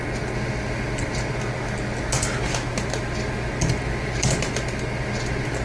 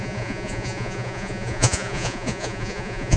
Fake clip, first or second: second